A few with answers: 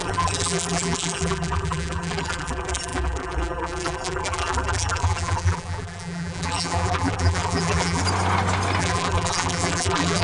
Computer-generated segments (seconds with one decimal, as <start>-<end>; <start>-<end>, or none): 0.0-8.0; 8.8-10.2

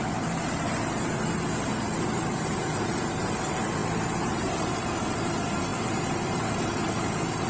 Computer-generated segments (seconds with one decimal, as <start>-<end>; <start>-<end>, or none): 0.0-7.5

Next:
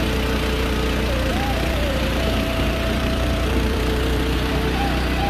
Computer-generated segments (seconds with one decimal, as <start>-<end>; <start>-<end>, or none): 1.3-4.5